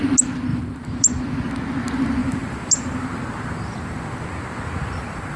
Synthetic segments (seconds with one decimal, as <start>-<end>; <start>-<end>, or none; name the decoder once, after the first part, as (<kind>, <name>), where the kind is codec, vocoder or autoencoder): 0.5-1.2 (vocoder, BigVGAN v2); 2.2-5.4